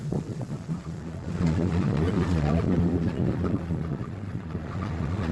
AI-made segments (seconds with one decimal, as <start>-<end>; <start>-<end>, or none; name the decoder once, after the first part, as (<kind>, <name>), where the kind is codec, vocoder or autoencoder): 0.0-5.3 (vocoder, Vocos)